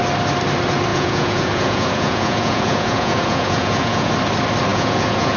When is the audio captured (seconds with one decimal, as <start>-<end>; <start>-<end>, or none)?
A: 0.0-0.9; 4.1-4.7